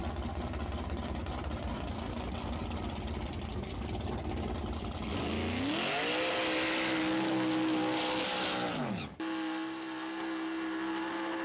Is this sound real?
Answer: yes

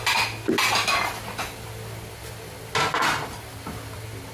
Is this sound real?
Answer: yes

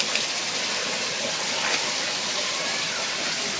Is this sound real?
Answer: yes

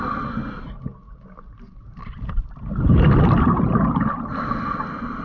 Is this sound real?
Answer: yes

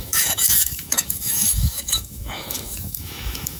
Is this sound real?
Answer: no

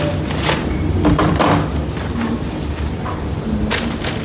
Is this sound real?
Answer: yes